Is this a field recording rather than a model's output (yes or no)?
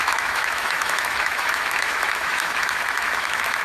no